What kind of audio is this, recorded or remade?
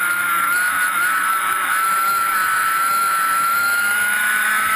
remade